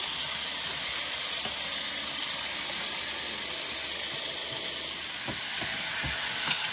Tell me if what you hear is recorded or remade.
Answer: recorded